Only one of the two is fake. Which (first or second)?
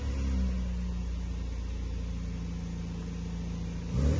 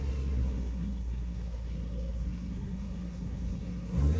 second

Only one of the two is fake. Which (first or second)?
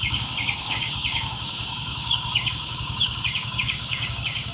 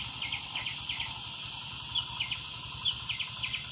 first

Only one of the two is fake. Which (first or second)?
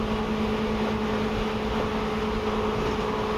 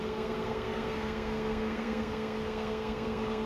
second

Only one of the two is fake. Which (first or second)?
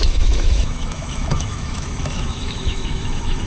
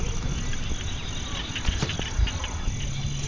first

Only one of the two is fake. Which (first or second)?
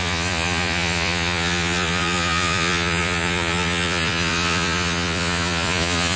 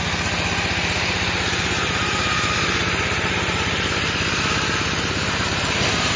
first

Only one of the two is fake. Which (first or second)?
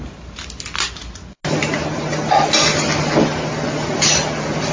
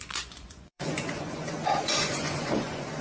second